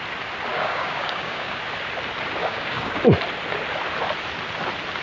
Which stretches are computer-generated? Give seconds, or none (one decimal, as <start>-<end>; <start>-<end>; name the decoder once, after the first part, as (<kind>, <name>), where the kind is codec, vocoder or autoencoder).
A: 0.5-1.6 (codec, DAC); 2.4-3.0